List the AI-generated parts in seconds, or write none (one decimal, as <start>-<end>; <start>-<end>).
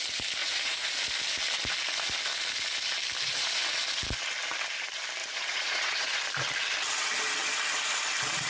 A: 0.4-0.9; 5.2-6.2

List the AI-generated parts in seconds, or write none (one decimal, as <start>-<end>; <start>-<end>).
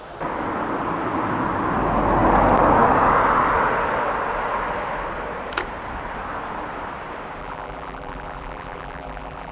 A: 7.4-9.5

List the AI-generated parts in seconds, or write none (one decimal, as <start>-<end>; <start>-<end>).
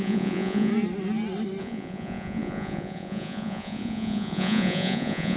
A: 0.0-0.7; 1.6-5.4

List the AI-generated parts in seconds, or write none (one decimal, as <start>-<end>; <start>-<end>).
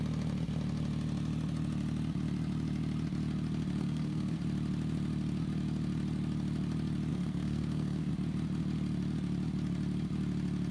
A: 3.8-4.4; 7.1-8.1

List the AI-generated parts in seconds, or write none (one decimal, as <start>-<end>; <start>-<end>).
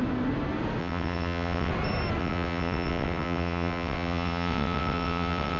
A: 0.8-1.7; 2.2-5.6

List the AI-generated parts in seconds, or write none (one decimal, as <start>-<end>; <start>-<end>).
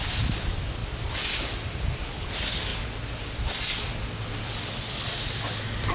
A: 0.0-0.8; 1.9-2.7